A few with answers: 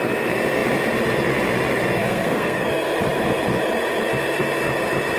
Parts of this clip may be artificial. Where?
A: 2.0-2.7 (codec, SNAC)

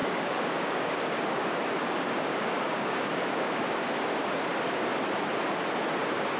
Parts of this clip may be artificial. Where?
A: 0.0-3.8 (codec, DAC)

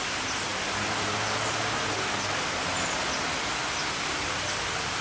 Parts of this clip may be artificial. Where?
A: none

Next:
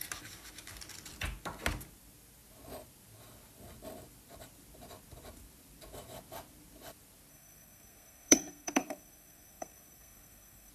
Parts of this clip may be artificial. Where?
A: 7.3-10.7 (codec, SNAC)